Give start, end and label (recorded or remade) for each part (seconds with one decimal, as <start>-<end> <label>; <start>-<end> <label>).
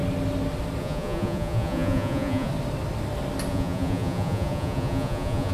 0.0-0.8 recorded; 0.8-2.5 remade; 2.5-3.5 recorded; 3.5-5.5 remade